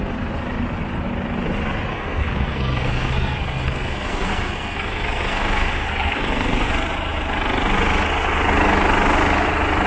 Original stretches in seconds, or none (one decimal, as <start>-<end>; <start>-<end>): 0.0-1.9; 6.7-9.9